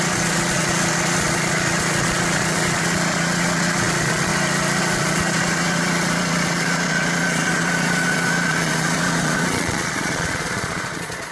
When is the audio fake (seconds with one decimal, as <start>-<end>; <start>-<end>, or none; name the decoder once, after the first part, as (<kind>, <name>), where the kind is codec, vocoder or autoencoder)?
0.0-4.3 (vocoder, Vocos); 4.8-11.3